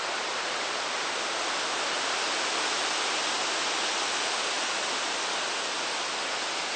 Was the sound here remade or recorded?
recorded